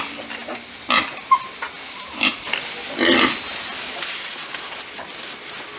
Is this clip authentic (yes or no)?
yes